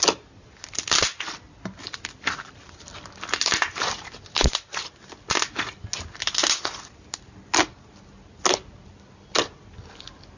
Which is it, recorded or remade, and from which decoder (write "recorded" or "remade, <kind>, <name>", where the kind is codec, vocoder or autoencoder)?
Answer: recorded